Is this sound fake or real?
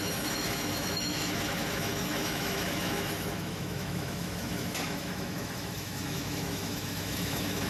fake